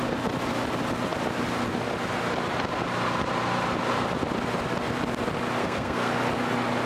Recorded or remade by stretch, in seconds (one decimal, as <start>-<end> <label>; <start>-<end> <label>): 0.0-5.6 recorded; 5.6-6.1 remade; 6.1-6.9 recorded